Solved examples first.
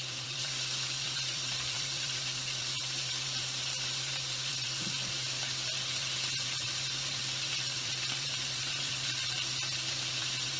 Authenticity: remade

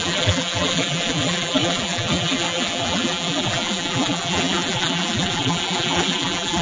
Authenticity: remade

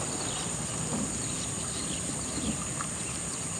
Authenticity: recorded